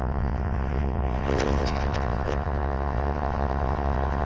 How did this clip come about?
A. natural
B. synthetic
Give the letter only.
B